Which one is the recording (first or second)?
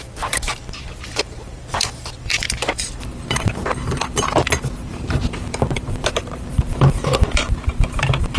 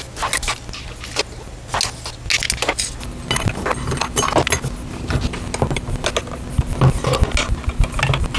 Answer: second